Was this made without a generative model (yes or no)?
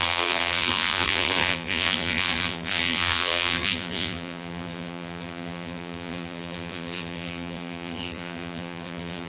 no